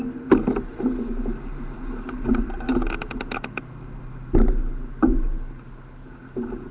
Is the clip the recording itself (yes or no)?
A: yes